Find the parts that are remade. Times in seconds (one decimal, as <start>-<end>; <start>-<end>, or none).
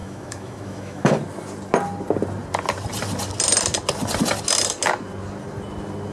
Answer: 0.0-1.2